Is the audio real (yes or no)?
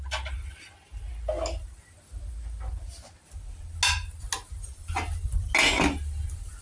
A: yes